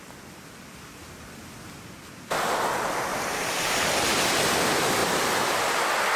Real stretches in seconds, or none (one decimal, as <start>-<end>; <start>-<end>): 0.0-3.1; 4.4-5.0; 5.8-6.2